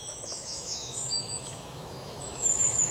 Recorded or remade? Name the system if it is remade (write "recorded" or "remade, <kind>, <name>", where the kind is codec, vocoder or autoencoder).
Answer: remade, autoencoder, DAC-VAE